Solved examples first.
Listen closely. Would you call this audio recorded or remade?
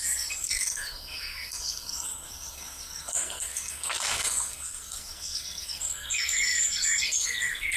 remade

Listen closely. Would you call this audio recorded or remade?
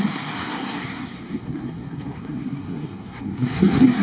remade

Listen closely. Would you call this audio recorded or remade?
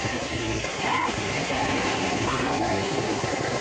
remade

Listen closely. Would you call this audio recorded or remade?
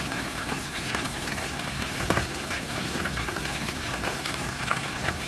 remade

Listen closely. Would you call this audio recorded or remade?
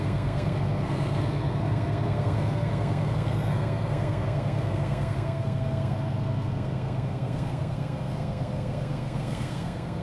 remade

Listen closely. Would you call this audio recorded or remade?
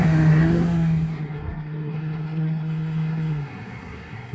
remade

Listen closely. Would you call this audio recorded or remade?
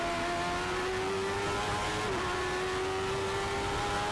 recorded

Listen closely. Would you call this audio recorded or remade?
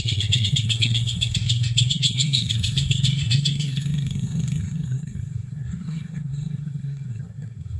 remade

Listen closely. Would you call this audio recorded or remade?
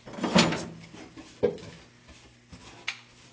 recorded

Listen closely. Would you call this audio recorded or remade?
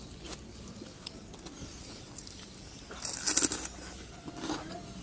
recorded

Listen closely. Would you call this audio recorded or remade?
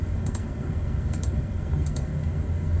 remade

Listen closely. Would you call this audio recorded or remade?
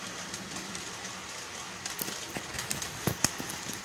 recorded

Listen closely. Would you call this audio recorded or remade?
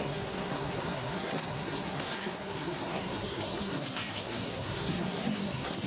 remade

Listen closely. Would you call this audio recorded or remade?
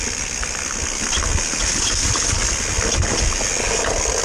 recorded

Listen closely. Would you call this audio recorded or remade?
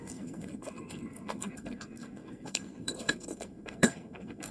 remade